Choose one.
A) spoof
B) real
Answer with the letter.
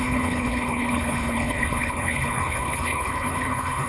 A